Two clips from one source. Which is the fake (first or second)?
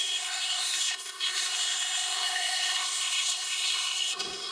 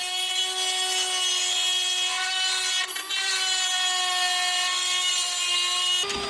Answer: first